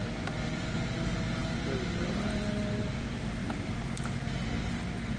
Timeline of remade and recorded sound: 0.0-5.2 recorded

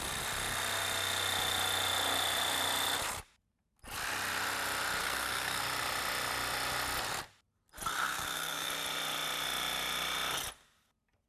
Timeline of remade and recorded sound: 0.0-5.0 recorded; 5.0-5.6 remade; 5.6-8.0 recorded; 8.0-8.7 remade; 8.7-11.3 recorded

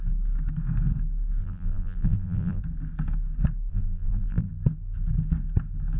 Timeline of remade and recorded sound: 0.0-1.4 recorded; 1.4-2.6 remade; 2.6-3.7 recorded; 3.7-4.5 remade; 4.5-6.0 recorded

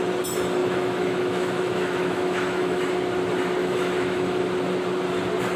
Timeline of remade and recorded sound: 0.0-0.6 recorded; 0.6-2.9 remade; 2.9-3.6 recorded; 3.6-4.4 remade; 4.4-5.6 recorded

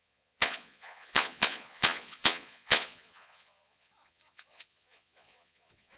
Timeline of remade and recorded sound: 0.0-6.0 remade

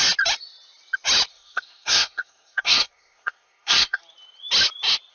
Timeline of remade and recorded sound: 0.0-1.3 recorded; 1.3-4.0 remade; 4.0-5.1 recorded